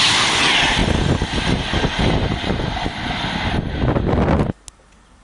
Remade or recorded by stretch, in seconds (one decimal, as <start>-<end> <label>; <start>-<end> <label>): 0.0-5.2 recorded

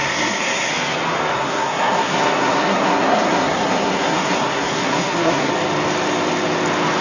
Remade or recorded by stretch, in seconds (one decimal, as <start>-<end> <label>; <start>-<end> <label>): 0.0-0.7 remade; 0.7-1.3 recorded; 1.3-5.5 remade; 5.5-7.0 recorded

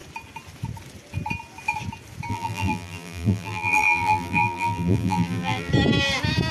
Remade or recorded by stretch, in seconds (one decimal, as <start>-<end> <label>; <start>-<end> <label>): 0.0-2.3 recorded; 2.3-5.7 remade; 5.7-6.5 recorded

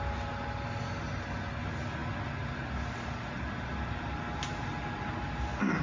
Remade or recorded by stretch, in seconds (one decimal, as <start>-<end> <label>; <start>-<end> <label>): 0.0-5.8 recorded